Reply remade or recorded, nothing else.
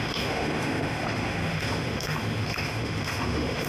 remade